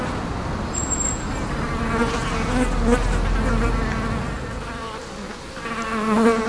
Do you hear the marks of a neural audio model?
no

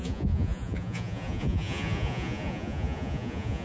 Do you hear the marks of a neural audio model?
yes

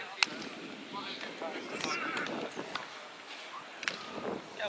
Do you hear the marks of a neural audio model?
no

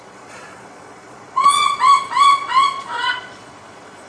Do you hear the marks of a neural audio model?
yes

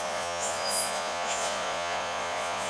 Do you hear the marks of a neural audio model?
yes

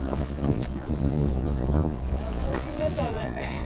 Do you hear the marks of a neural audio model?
yes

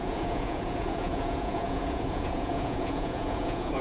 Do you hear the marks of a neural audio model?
yes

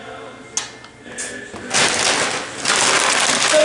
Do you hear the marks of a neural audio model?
no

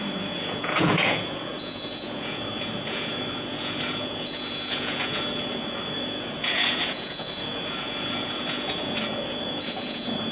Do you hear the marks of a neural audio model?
yes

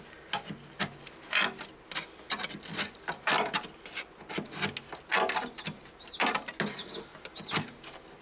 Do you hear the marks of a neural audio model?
no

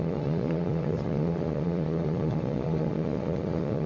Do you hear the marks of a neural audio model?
yes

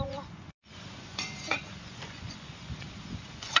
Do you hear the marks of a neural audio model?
yes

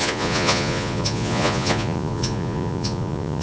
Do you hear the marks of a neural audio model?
yes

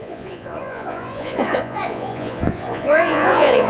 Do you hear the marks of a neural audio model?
yes